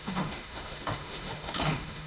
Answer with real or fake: fake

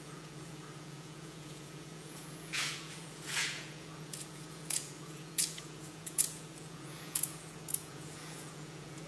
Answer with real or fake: fake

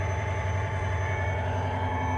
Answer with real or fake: fake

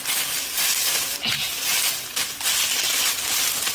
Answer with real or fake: real